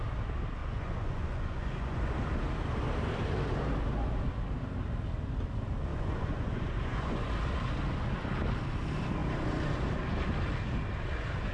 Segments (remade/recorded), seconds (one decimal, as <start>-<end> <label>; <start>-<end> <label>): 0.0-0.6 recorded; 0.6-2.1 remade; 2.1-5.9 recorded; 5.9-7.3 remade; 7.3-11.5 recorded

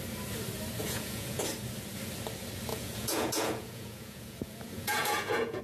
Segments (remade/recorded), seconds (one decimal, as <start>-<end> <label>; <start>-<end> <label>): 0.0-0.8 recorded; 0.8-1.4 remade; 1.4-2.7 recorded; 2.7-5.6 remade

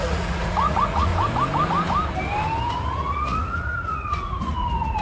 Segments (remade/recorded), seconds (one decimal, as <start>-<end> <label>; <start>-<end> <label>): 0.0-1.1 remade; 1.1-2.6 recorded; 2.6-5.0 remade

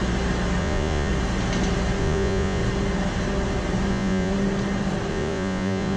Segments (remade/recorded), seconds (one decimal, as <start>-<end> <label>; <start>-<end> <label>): 0.0-0.6 recorded; 0.6-1.1 remade; 1.1-2.0 recorded; 2.0-2.6 remade; 2.6-3.9 recorded; 3.9-4.3 remade; 4.3-5.1 recorded; 5.1-6.0 remade

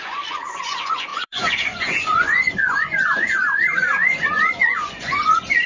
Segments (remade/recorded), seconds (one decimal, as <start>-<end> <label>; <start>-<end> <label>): 0.0-5.7 remade

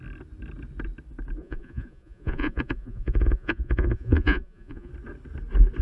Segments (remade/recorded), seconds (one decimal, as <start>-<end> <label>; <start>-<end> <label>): 0.0-1.4 recorded; 1.4-4.9 remade; 4.9-5.8 recorded

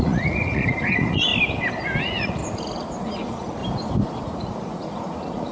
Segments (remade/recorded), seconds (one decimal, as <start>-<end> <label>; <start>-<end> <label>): 0.0-1.3 remade; 1.3-2.0 recorded; 2.0-2.4 remade; 2.4-3.0 recorded; 3.0-3.6 remade; 3.6-4.2 recorded; 4.2-5.5 remade

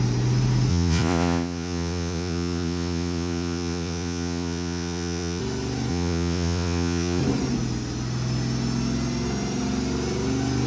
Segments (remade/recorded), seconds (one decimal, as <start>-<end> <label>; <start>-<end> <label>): 0.0-0.7 recorded; 0.7-5.4 remade; 5.4-5.9 recorded; 5.9-7.2 remade; 7.2-10.7 recorded